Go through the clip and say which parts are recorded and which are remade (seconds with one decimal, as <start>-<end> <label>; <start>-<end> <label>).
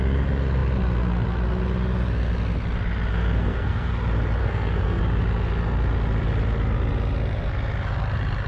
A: 0.0-3.1 recorded; 3.1-3.9 remade; 3.9-4.4 recorded; 4.4-5.0 remade; 5.0-8.5 recorded